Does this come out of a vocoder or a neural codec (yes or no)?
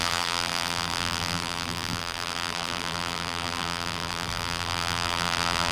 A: yes